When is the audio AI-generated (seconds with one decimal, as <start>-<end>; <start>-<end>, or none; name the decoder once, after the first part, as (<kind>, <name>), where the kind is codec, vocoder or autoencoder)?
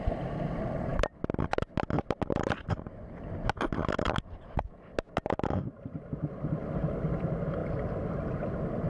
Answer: none